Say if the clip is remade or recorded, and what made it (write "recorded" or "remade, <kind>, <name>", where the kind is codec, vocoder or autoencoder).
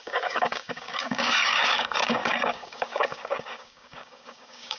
remade, codec, DAC